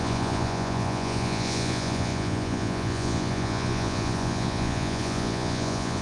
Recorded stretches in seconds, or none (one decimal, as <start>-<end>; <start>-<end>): none